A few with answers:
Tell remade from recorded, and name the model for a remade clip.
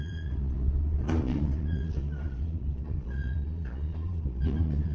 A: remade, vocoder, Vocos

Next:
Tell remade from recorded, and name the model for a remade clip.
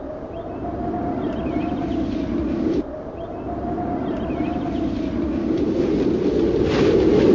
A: recorded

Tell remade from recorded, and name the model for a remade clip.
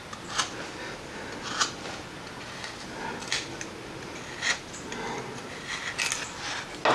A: recorded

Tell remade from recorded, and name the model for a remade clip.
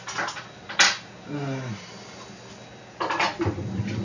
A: recorded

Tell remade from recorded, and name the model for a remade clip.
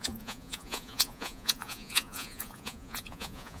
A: remade, vocoder, Vocos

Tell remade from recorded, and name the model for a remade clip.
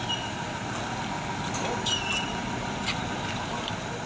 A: recorded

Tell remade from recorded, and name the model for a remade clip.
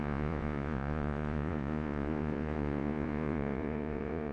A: remade, vocoder, Vocos